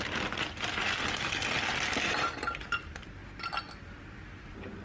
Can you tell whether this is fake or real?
real